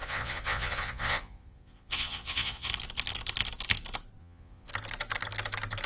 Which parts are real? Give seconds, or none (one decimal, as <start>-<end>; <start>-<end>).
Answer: 2.7-4.2; 4.7-5.9

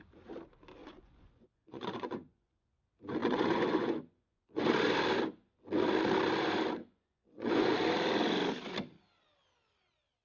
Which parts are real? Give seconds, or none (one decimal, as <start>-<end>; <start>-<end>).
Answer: 0.0-0.8; 2.8-3.2; 4.7-6.8; 7.7-10.2

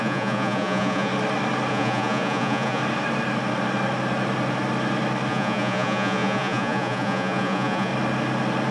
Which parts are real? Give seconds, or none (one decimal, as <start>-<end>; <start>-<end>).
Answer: 1.1-1.7; 2.8-5.3; 7.9-8.7

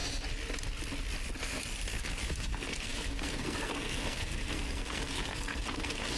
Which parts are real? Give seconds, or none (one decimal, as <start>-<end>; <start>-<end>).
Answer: 0.0-1.9